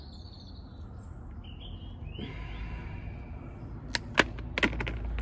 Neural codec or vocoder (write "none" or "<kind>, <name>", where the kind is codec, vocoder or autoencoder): none